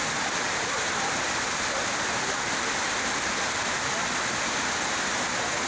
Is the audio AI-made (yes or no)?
no